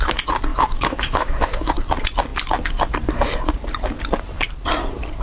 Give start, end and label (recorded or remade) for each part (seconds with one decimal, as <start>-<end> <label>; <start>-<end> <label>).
0.0-0.5 recorded; 0.5-1.7 remade; 1.7-5.2 recorded